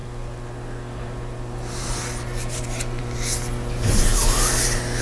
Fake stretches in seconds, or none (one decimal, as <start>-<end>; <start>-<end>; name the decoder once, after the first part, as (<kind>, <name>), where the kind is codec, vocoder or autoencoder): none

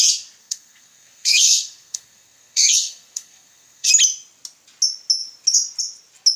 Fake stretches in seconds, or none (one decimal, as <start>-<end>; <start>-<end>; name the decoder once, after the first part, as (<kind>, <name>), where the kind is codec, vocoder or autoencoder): 0.4-3.9 (codec, SNAC)

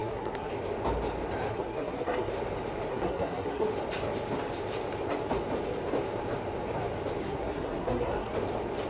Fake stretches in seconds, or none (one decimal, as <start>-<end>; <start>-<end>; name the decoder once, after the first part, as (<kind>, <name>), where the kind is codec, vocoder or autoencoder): 0.0-0.5 (codec, SNAC); 1.5-2.3; 2.9-3.7; 7.2-8.3

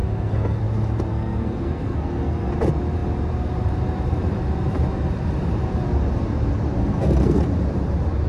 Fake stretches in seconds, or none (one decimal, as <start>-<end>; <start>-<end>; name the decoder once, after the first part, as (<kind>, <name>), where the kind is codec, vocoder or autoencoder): 0.0-0.6 (codec, SNAC); 1.1-2.5; 6.8-7.4

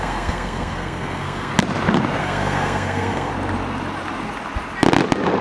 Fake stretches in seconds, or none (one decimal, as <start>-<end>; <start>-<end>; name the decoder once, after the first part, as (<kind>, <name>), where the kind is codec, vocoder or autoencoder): 0.0-1.5 (codec, SNAC); 2.2-3.3

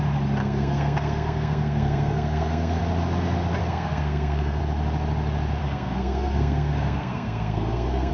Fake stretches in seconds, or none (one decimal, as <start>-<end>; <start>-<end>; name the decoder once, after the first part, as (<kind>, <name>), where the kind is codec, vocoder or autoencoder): 0.4-2.8 (codec, SNAC); 3.6-4.6; 5.6-8.1